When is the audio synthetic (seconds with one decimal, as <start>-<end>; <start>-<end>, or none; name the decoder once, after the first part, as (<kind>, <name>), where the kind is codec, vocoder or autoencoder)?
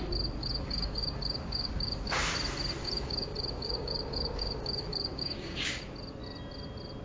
0.4-2.2 (codec, DAC); 2.8-5.8